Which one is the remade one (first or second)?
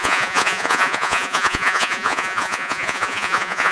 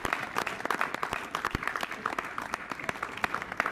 first